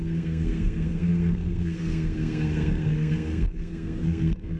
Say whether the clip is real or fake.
fake